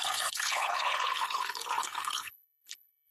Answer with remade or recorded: remade